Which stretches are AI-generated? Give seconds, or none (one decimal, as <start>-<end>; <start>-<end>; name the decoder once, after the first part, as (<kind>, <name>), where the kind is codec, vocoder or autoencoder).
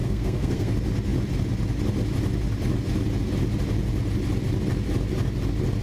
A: 0.0-0.7 (codec, SNAC)